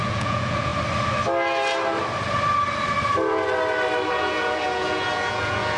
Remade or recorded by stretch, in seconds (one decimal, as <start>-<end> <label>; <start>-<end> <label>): 0.0-0.7 remade; 0.7-4.1 recorded; 4.1-5.8 remade